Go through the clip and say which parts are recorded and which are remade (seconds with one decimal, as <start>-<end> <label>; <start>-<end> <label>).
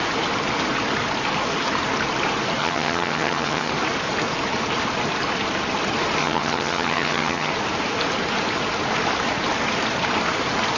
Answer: 0.0-2.6 recorded; 2.6-3.7 remade; 3.7-6.2 recorded; 6.2-7.5 remade; 7.5-10.8 recorded